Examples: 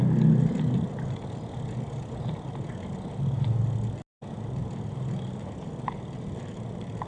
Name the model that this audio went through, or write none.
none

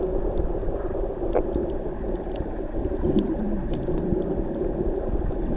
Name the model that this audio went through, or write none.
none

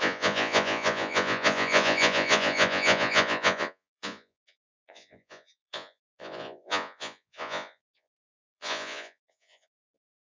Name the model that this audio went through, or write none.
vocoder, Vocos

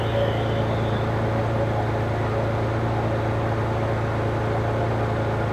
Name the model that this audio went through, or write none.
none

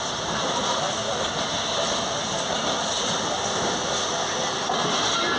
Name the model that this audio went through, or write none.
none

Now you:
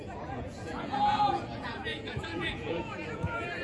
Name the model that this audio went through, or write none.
vocoder, Vocos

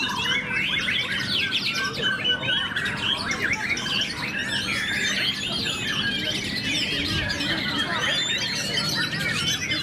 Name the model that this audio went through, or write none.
none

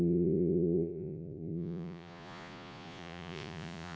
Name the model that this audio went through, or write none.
vocoder, Vocos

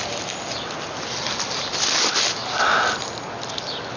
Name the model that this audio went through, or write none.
none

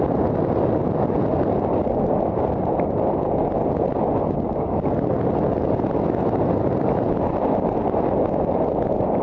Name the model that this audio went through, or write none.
none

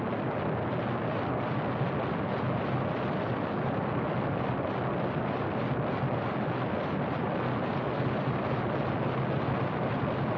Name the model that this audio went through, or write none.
none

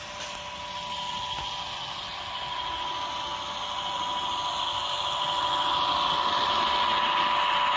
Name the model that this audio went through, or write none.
none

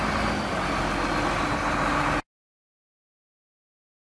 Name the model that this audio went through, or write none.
none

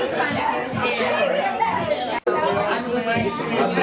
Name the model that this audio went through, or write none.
none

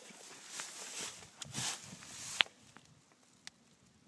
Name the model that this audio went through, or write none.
none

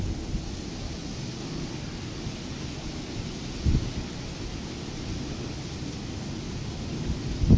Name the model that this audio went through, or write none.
none